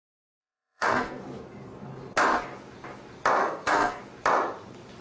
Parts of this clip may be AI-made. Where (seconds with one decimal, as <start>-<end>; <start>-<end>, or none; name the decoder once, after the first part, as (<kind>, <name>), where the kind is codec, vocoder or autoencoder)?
0.4-1.2 (codec, SNAC); 3.4-4.0